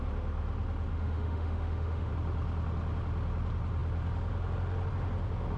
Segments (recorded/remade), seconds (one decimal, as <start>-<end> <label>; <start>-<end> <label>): 0.0-0.9 recorded; 0.9-2.1 remade; 2.1-5.6 recorded